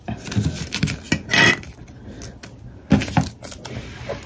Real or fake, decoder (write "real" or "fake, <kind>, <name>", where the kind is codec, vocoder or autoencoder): real